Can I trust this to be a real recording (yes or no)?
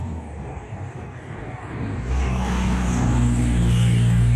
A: no